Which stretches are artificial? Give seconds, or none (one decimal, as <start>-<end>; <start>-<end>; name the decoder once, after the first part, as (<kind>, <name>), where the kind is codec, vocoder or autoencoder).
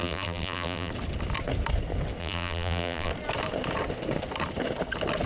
0.0-0.9 (vocoder, BigVGAN v2); 2.2-3.1